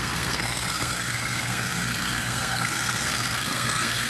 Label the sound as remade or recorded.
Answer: remade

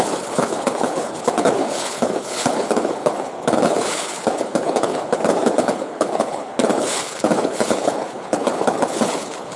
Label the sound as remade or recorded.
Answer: remade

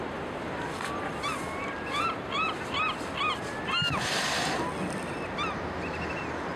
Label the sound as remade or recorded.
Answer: recorded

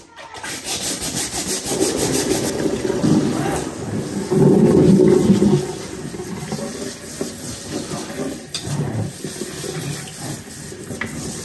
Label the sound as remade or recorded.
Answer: recorded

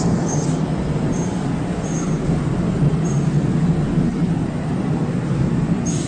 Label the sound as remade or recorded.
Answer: recorded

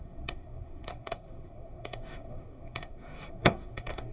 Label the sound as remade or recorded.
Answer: remade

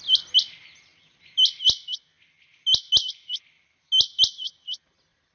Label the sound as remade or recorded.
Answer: recorded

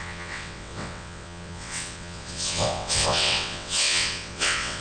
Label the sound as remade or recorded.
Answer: remade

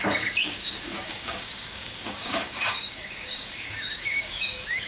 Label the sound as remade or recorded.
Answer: remade